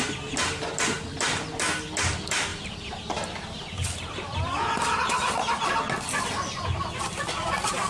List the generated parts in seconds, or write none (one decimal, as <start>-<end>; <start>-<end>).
none